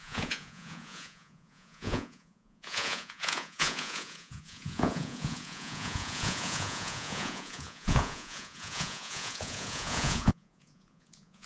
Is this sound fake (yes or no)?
yes